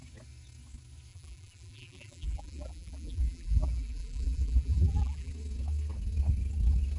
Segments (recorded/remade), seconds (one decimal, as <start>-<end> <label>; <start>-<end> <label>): 0.0-1.1 recorded; 1.1-5.3 remade; 5.3-7.0 recorded